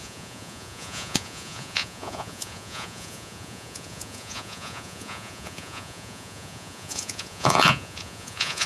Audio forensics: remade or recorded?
remade